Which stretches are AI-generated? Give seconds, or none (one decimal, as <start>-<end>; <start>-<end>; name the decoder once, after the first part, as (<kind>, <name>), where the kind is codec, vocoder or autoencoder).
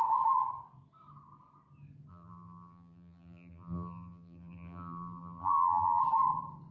2.1-6.0 (vocoder, BigVGAN v2)